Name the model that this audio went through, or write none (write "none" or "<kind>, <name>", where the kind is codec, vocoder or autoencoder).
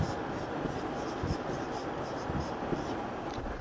none